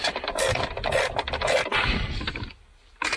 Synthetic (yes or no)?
no